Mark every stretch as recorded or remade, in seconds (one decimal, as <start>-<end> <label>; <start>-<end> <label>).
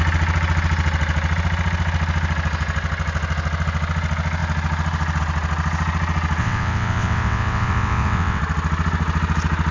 0.0-6.4 recorded; 6.4-8.4 remade; 8.4-9.7 recorded